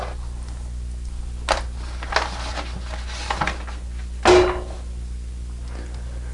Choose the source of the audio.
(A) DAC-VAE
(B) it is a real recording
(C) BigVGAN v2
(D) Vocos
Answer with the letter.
B